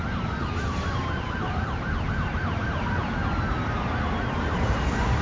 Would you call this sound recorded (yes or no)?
yes